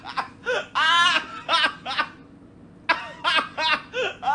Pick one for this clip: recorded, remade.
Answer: recorded